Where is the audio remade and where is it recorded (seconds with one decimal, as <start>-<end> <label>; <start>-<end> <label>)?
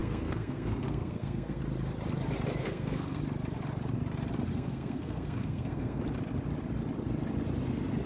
0.0-1.6 remade; 1.6-2.6 recorded; 2.6-3.2 remade; 3.2-4.5 recorded; 4.5-6.0 remade; 6.0-8.1 recorded